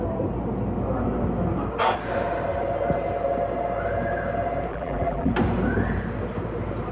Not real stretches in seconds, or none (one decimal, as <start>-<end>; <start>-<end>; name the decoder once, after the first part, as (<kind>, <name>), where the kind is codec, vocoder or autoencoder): 4.7-5.3 (vocoder, BigVGAN v2)